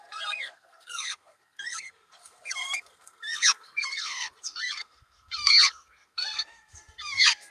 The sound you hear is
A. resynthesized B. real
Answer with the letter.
A